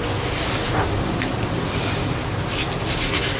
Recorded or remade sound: recorded